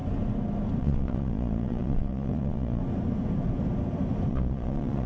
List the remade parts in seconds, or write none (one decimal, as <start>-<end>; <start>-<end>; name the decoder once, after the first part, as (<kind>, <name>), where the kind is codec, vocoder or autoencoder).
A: 0.8-2.8 (vocoder, Vocos); 4.3-5.1